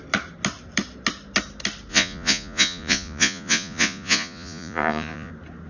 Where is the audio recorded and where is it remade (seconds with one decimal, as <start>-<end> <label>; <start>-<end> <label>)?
0.0-1.9 recorded; 1.9-5.3 remade; 5.3-5.7 recorded